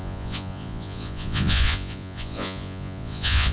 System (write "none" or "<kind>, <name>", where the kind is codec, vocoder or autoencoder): vocoder, Vocos